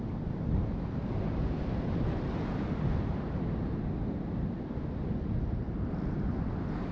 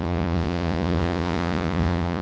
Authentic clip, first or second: first